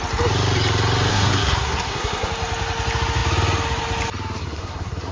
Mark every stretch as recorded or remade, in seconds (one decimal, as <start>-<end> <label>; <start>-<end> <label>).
0.0-1.1 recorded; 1.1-2.3 remade; 2.3-4.4 recorded; 4.4-5.1 remade